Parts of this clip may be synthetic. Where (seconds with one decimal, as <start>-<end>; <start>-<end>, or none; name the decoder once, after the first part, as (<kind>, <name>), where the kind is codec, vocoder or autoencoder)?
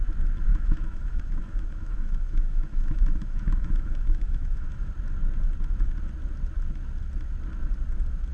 0.5-4.9 (autoencoder, DAC-VAE)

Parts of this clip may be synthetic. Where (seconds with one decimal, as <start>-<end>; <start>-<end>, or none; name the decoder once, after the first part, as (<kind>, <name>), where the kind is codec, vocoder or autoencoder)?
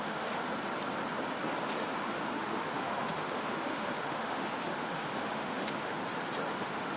0.0-0.4 (autoencoder, DAC-VAE); 2.1-6.0; 6.6-7.0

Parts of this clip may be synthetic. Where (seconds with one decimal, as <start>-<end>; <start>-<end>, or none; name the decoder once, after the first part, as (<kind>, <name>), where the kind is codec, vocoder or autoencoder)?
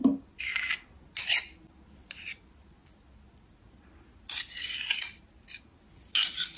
none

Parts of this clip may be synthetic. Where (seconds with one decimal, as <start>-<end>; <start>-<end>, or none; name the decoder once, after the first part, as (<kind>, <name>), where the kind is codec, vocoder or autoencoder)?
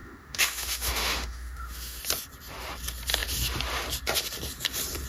0.0-2.0 (autoencoder, DAC-VAE)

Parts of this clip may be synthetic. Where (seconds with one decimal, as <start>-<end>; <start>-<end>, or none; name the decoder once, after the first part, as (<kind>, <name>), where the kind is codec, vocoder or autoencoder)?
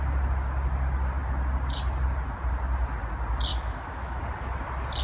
3.5-4.2 (autoencoder, DAC-VAE)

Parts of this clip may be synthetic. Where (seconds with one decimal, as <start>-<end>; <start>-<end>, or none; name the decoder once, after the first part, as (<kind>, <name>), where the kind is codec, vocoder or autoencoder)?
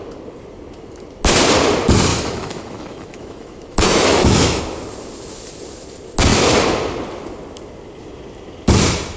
2.1-4.6 (autoencoder, DAC-VAE)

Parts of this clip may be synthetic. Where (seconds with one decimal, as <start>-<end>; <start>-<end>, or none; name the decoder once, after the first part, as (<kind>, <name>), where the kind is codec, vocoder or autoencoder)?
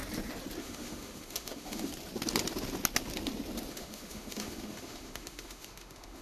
0.6-1.9 (autoencoder, DAC-VAE); 3.7-6.2